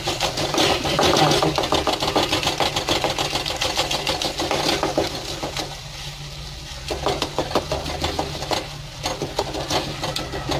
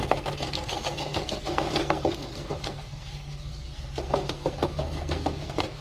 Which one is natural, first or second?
first